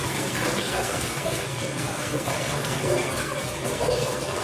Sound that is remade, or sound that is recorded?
remade